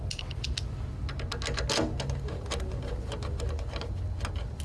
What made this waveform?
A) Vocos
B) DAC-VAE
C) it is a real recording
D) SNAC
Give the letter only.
C